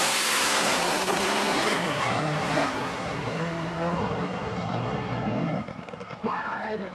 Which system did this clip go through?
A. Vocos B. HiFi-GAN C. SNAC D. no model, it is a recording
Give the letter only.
C